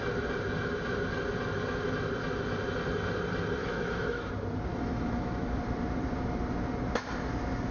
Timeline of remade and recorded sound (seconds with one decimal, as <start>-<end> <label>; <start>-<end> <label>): 0.0-3.6 recorded; 3.6-4.3 remade; 4.3-4.7 recorded; 4.7-5.6 remade; 5.6-7.7 recorded